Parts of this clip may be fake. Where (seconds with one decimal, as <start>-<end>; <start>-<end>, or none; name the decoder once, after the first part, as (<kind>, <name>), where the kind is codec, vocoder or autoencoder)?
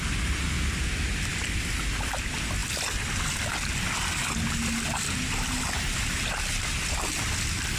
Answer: none